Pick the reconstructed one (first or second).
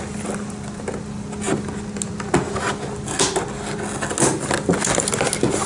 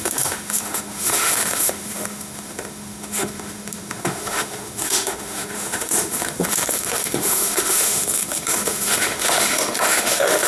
second